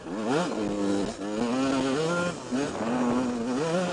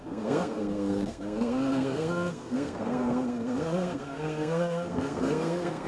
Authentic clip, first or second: first